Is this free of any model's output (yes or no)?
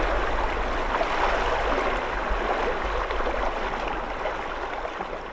yes